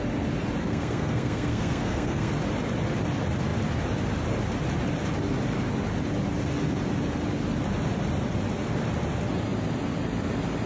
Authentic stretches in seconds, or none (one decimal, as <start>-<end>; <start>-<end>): 0.0-0.6; 2.3-10.7